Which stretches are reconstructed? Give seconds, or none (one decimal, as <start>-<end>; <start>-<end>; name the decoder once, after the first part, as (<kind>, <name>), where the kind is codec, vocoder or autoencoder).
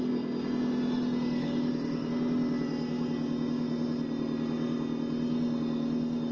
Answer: 1.4-2.1 (codec, DAC)